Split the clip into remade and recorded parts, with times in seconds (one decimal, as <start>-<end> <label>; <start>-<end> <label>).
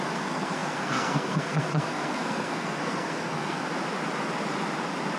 0.0-3.6 remade; 3.6-5.2 recorded